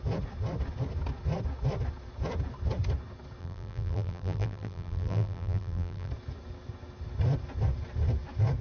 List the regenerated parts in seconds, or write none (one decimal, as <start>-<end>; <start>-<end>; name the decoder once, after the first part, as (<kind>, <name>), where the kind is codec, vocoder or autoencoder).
3.4-6.1 (vocoder, BigVGAN v2)